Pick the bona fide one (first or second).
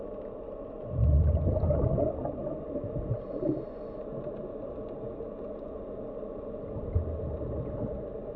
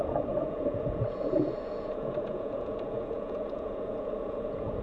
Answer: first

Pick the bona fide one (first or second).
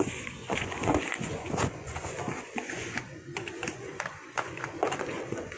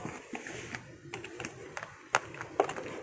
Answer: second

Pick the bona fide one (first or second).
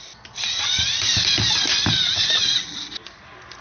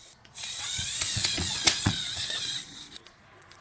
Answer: first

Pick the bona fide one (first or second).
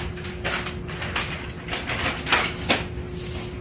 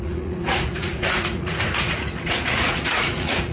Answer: first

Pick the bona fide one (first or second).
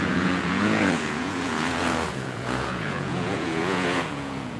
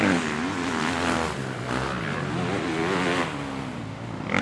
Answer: second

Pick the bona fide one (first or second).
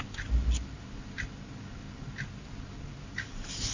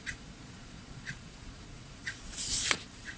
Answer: first